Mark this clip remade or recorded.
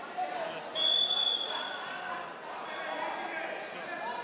recorded